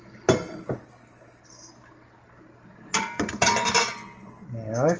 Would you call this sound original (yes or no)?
yes